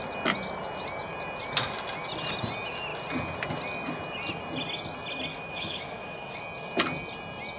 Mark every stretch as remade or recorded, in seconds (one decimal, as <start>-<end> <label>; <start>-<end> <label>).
0.0-5.3 recorded; 5.3-6.4 remade; 6.4-7.6 recorded